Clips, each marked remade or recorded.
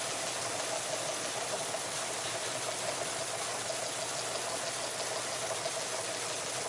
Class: recorded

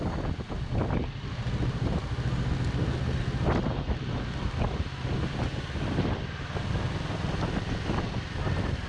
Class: recorded